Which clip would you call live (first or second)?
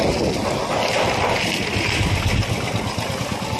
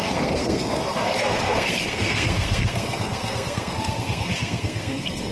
first